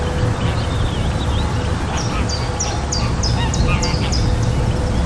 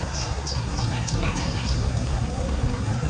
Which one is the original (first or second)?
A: first